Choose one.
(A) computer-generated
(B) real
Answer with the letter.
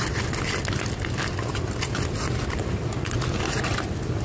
B